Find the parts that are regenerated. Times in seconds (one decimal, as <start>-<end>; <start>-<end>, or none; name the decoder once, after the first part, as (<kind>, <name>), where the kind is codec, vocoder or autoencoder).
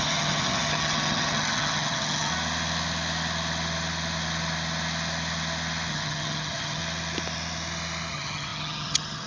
0.0-2.3 (vocoder, HiFi-GAN); 5.9-6.8; 8.1-9.3